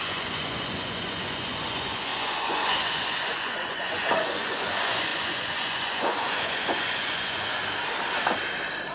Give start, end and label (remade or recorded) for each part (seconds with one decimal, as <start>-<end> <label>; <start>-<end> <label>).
0.0-7.6 remade; 7.6-8.9 recorded